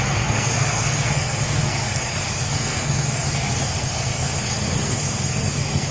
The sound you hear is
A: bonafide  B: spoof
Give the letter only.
B